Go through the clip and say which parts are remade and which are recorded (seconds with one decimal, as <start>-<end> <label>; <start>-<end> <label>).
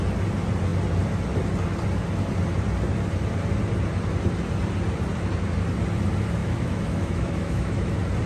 0.0-6.4 recorded; 6.4-7.9 remade; 7.9-8.3 recorded